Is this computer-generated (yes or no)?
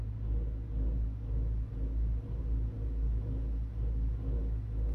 no